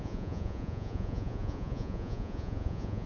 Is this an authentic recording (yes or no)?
no